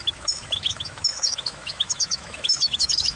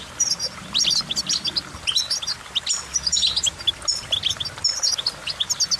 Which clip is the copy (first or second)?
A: first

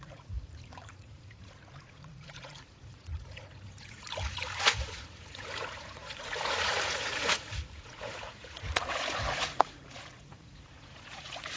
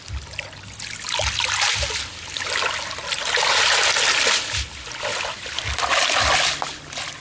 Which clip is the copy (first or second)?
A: first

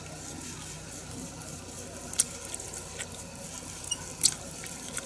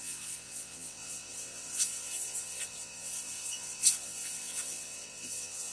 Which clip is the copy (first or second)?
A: second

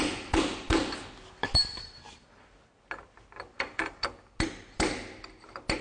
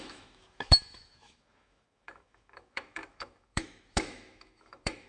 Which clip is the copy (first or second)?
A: second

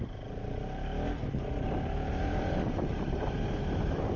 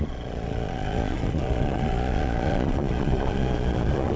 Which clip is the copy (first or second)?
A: second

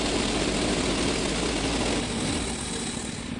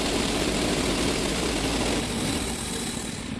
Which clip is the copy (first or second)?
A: second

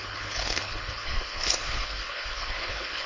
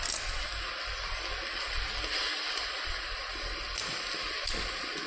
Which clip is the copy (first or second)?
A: first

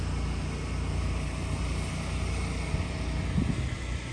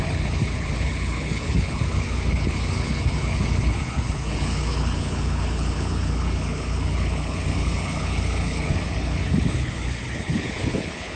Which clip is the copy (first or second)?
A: second